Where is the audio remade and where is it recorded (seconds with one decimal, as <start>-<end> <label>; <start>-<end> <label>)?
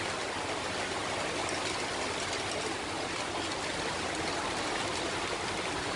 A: 0.0-6.0 recorded